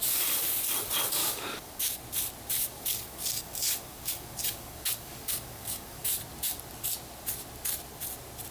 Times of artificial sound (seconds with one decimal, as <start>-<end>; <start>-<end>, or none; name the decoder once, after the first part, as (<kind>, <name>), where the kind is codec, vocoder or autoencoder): 1.2-2.0 (codec, DAC); 2.6-6.1